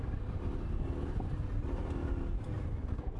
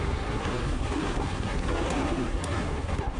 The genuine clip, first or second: first